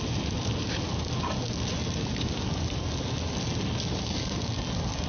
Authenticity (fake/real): real